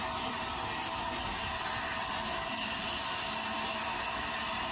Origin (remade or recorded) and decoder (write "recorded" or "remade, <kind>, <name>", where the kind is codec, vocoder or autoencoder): recorded